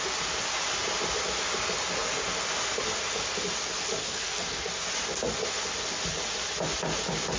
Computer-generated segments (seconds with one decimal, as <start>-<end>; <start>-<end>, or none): 4.0-4.7